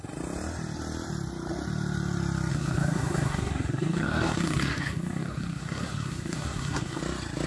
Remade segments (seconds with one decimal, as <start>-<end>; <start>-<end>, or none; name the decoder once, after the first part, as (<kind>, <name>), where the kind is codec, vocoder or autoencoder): 2.5-7.0 (codec, SNAC)